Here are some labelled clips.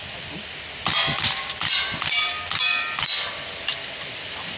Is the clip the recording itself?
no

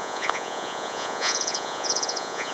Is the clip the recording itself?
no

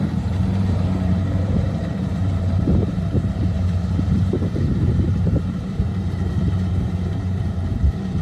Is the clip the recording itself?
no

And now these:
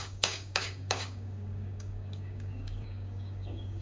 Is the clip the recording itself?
no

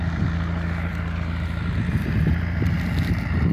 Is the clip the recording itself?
yes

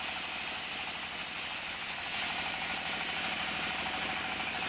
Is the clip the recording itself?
yes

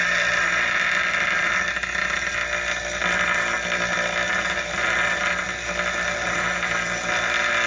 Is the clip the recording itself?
yes